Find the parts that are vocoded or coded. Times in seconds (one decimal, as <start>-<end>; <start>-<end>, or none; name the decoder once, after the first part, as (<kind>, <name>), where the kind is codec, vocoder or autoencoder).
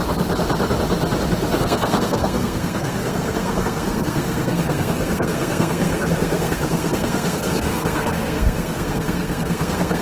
1.6-10.0 (codec, SNAC)